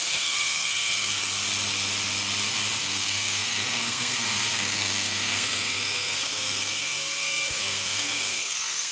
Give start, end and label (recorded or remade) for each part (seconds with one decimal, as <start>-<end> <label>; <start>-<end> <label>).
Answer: 0.0-1.2 remade; 1.2-2.8 recorded; 2.8-8.9 remade

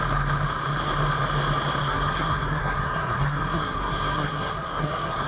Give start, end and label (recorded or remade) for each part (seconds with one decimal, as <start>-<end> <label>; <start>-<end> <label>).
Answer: 0.0-1.8 recorded; 1.8-5.3 remade

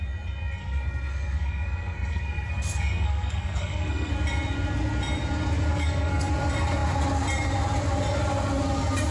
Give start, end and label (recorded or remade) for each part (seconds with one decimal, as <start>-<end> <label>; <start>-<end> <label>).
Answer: 0.0-0.6 recorded; 0.6-4.1 remade; 4.1-5.7 recorded; 5.7-6.3 remade; 6.3-9.1 recorded

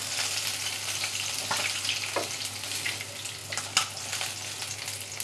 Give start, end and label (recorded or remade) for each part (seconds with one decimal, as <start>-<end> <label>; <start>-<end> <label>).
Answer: 0.0-5.2 recorded

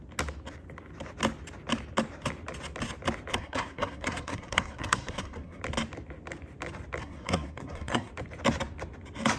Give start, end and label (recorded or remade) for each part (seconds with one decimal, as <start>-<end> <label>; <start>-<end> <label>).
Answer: 0.0-3.3 recorded; 3.3-5.6 remade; 5.6-7.0 recorded; 7.0-8.1 remade; 8.1-9.4 recorded

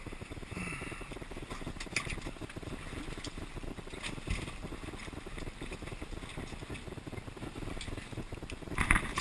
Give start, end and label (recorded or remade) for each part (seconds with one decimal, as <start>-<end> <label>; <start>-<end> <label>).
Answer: 0.0-9.2 recorded

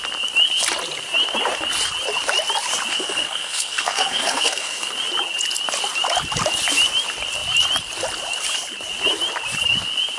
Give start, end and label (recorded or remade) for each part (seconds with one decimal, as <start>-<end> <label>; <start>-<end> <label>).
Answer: 0.0-2.9 recorded; 2.9-4.9 remade; 4.9-10.2 recorded

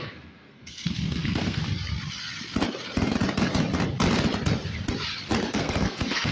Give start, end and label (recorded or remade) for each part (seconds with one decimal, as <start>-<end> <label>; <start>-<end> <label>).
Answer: 0.0-1.6 remade; 1.6-5.4 recorded; 5.4-6.3 remade